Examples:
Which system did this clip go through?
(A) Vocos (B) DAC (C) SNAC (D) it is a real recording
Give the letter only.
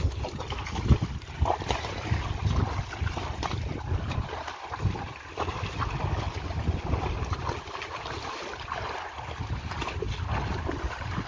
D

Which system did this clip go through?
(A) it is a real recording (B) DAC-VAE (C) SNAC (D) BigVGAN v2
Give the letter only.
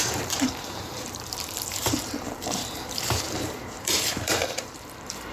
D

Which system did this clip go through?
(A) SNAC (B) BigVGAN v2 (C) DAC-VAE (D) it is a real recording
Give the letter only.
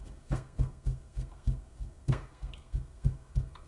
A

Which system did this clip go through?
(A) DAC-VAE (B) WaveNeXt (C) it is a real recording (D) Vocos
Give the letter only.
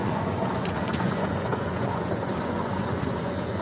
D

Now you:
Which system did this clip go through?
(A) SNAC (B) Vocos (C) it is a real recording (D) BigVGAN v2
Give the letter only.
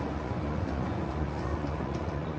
B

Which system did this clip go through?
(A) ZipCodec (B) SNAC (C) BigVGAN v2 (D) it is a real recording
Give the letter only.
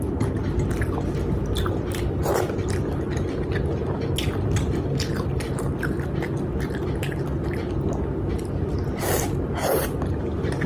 D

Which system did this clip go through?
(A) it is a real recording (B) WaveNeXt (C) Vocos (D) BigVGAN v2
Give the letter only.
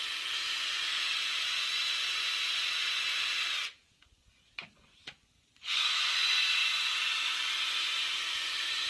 C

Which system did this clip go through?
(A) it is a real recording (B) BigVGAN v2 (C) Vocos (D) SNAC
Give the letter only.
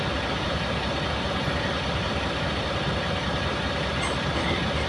A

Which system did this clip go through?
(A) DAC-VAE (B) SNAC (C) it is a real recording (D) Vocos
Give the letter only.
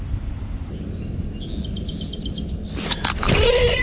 C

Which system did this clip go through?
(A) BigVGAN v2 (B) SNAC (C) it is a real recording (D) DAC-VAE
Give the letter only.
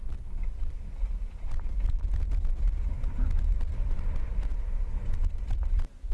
C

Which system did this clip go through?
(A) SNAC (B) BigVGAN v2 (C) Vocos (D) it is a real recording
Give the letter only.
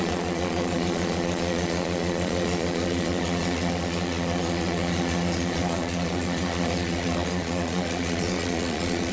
C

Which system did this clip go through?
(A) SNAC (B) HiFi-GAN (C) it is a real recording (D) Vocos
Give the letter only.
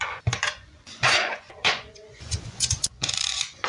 D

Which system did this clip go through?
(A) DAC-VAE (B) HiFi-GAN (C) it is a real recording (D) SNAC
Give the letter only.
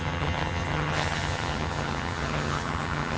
B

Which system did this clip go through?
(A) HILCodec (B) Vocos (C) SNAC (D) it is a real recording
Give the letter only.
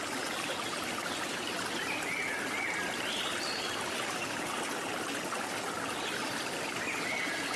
D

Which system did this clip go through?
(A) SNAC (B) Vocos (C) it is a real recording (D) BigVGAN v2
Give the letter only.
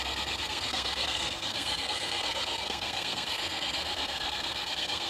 A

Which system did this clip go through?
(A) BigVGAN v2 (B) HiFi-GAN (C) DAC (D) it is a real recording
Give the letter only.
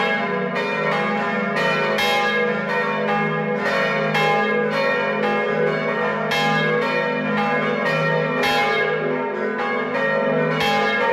D